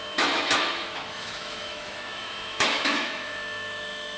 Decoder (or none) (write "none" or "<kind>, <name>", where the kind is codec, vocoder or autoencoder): autoencoder, DAC-VAE